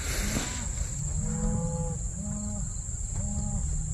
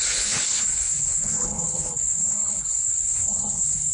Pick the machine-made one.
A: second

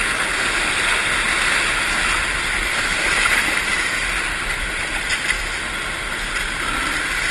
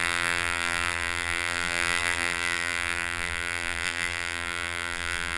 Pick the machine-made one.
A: second